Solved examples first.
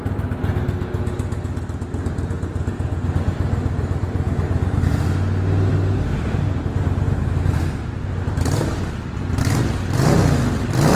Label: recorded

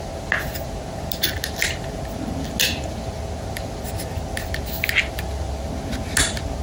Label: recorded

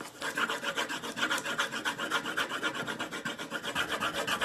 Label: recorded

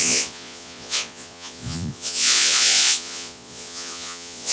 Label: remade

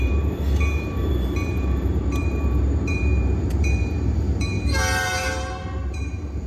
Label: remade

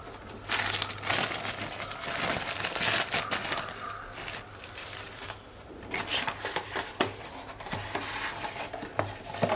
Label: recorded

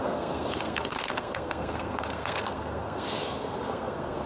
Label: remade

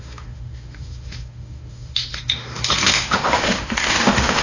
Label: remade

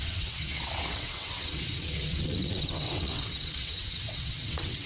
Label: remade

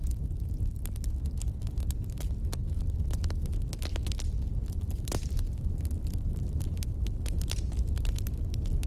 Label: recorded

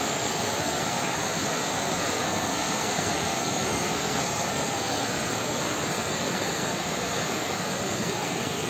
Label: remade